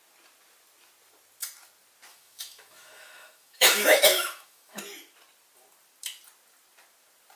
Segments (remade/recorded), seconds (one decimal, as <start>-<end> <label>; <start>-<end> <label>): 0.0-2.1 recorded; 2.1-4.8 remade; 4.8-7.4 recorded